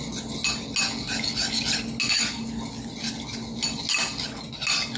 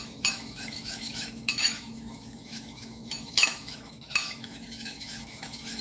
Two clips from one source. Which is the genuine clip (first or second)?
first